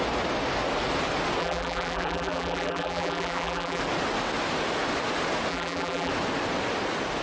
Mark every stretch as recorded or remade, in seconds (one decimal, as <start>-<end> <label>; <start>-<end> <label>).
0.0-1.4 recorded; 1.4-3.8 remade; 3.8-5.5 recorded; 5.5-6.1 remade; 6.1-7.2 recorded